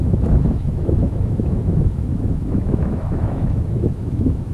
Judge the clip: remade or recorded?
remade